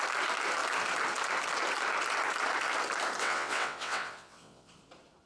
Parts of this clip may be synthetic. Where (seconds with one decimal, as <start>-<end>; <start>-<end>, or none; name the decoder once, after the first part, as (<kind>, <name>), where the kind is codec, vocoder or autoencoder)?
3.2-4.7 (vocoder, WaveNeXt)